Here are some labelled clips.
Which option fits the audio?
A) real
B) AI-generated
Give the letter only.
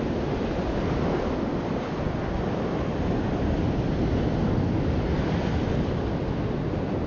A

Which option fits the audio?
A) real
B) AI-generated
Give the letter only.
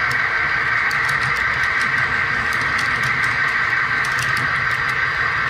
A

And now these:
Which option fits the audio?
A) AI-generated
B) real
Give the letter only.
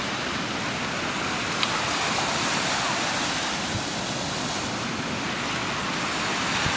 B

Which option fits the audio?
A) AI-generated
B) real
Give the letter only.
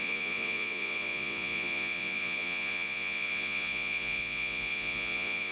A